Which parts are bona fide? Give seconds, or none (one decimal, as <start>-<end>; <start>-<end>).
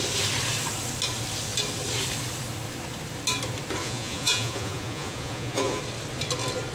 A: 0.0-3.8; 5.8-6.7